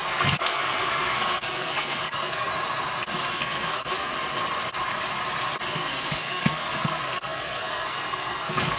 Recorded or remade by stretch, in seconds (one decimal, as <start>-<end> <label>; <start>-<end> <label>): 0.0-2.5 remade; 2.5-3.2 recorded; 3.2-4.1 remade; 4.1-5.7 recorded; 5.7-8.8 remade